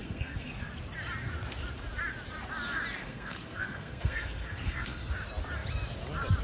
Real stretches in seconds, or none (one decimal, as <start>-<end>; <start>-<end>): 0.5-3.0; 5.1-6.4